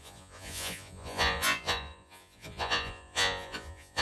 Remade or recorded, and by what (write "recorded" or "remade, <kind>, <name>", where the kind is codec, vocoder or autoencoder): remade, vocoder, Vocos